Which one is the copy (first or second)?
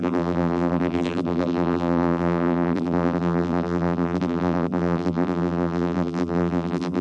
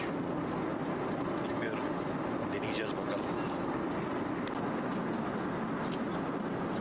first